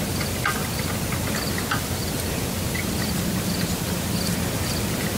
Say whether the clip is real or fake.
real